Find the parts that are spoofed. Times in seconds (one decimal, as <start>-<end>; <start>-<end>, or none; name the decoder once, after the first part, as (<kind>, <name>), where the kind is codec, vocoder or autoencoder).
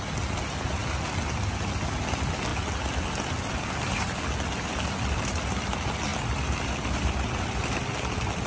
6.1-8.1 (vocoder, BigVGAN v2)